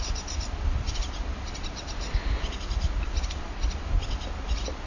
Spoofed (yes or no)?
no